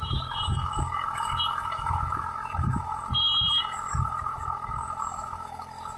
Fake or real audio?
fake